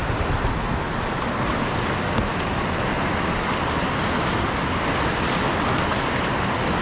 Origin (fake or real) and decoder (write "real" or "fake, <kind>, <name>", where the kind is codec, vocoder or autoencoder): real